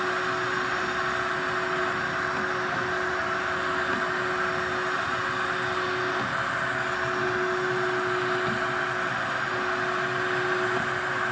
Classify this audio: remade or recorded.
recorded